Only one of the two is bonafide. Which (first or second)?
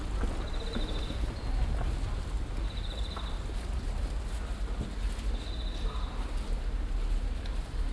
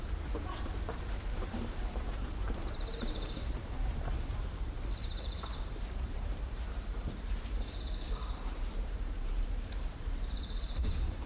first